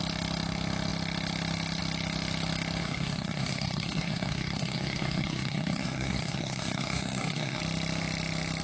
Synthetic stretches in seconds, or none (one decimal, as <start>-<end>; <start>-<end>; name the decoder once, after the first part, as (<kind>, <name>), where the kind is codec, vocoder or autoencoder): 2.8-7.6 (codec, SNAC)